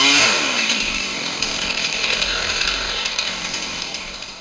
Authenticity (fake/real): fake